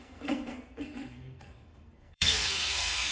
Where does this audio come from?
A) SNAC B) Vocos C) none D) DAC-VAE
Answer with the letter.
A